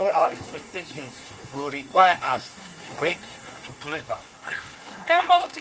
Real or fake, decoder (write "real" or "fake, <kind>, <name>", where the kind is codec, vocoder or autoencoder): fake, codec, SNAC